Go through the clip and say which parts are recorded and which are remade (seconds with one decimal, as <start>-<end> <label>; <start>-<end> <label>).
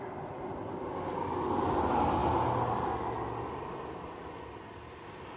0.0-5.4 recorded